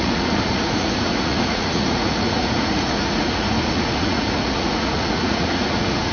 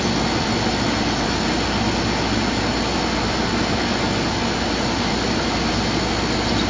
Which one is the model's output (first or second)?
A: first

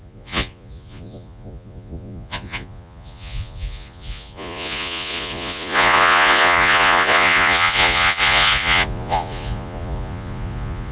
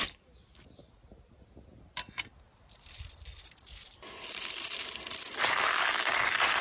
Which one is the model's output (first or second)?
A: first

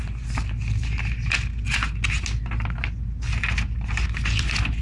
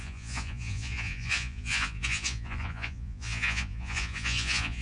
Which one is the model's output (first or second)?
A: second